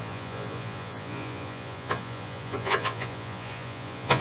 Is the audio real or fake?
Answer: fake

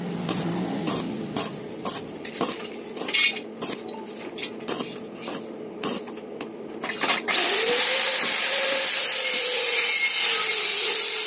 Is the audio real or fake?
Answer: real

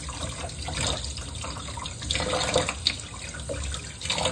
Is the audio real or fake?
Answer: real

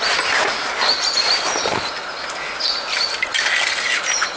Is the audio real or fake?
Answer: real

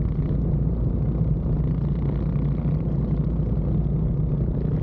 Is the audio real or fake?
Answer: real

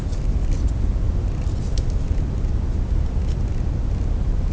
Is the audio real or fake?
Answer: real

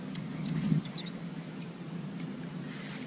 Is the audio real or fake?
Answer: real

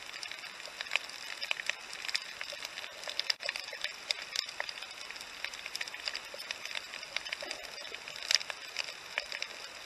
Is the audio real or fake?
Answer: real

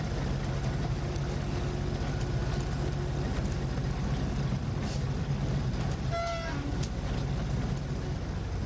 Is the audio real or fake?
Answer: real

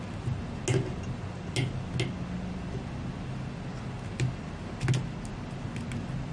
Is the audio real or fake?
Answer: real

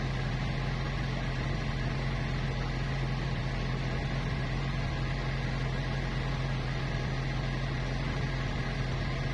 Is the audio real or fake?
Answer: real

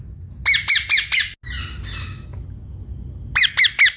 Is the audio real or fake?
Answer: real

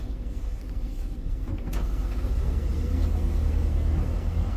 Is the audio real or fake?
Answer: fake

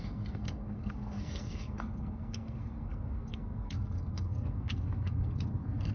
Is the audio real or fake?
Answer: fake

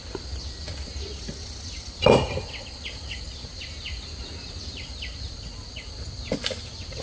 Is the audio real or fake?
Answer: real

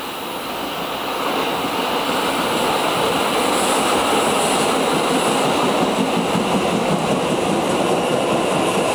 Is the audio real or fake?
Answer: real